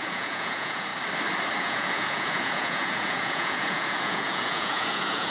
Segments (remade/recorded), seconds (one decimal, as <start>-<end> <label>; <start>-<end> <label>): 0.0-0.9 remade; 0.9-1.6 recorded; 1.6-5.3 remade